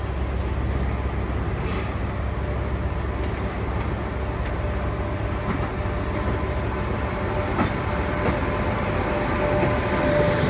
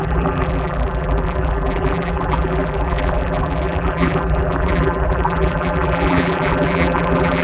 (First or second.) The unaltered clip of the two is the first